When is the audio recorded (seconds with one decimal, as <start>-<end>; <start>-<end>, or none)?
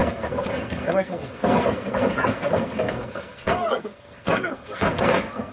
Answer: none